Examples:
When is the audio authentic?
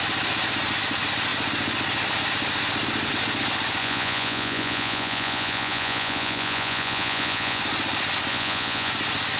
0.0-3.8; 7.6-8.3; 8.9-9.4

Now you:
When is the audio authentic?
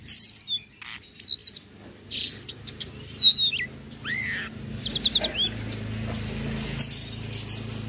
0.0-7.9